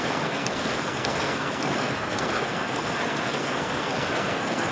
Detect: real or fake fake